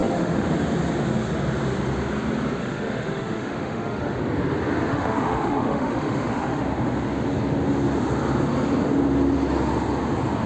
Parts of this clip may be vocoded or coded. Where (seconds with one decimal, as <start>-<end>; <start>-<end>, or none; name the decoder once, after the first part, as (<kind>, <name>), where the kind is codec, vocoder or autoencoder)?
0.0-0.5 (autoencoder, DAC-VAE); 2.6-4.2; 4.9-6.6